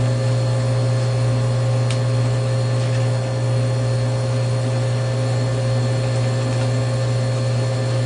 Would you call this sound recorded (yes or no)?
yes